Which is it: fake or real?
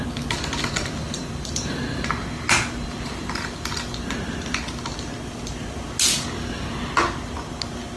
real